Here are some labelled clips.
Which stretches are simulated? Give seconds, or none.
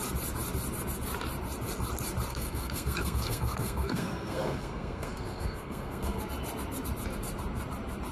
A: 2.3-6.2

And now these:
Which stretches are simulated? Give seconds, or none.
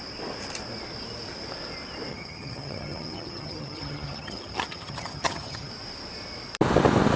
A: 2.1-5.7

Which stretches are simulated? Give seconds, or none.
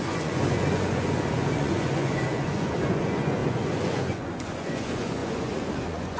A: 0.0-6.2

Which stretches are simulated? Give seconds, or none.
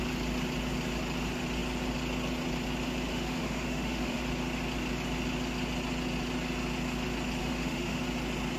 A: 3.1-4.2; 7.4-8.0